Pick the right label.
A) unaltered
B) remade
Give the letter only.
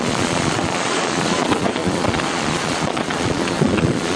B